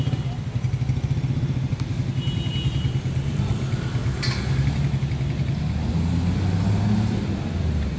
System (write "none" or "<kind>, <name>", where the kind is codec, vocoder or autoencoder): none